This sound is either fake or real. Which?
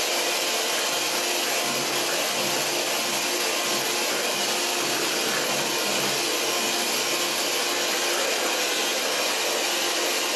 real